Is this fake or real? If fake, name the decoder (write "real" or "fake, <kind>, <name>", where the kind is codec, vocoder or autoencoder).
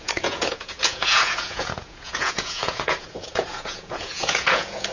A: fake, vocoder, Vocos